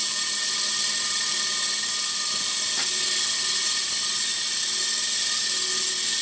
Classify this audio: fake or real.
real